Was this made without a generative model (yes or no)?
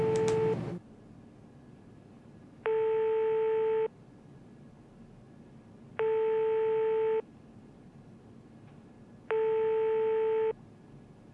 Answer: yes